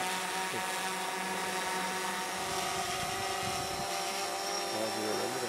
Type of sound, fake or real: real